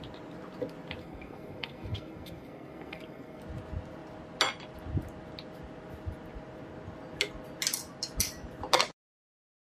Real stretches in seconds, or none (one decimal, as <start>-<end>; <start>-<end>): 0.0-1.0; 3.4-9.8